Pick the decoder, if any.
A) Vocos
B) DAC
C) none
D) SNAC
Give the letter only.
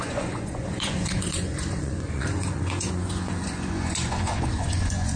A